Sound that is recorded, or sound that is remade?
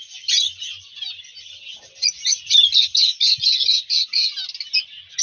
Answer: recorded